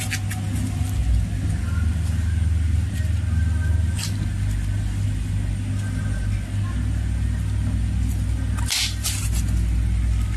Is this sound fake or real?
real